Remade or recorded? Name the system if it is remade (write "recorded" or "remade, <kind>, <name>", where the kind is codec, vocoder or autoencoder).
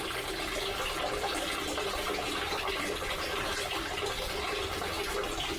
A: recorded